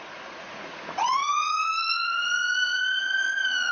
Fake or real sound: fake